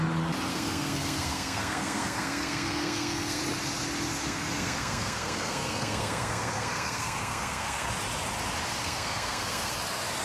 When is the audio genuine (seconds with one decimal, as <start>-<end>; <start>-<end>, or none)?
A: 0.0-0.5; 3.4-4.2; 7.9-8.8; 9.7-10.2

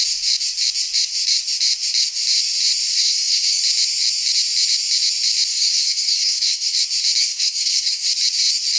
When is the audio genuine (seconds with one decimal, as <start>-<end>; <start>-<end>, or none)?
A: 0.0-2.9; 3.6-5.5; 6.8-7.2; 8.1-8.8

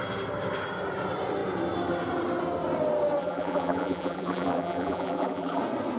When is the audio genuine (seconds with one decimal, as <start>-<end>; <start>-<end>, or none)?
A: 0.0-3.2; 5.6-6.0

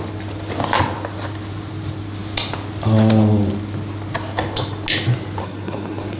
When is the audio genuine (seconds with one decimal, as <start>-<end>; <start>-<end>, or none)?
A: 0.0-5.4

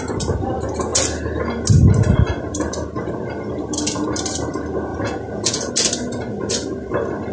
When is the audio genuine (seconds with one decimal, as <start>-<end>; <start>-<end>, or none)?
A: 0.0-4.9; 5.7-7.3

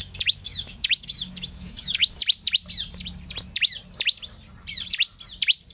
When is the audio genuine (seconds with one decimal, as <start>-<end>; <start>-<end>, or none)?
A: 2.0-5.7

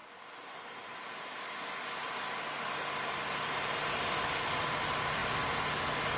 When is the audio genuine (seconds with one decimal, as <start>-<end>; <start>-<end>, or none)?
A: 0.0-6.2

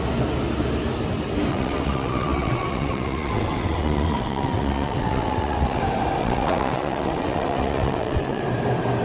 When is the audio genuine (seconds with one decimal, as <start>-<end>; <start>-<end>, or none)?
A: 0.0-1.5; 5.8-6.2; 8.4-9.0